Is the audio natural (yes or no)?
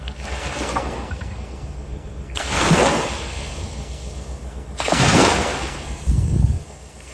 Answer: no